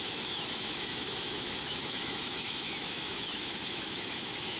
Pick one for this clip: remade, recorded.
remade